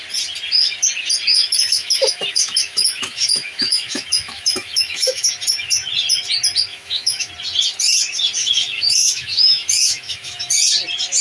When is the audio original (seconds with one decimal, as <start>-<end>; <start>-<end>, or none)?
0.0-1.3; 5.3-6.7; 7.3-8.4; 10.5-11.2